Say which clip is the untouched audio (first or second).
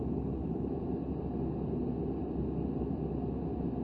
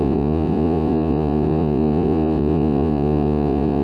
first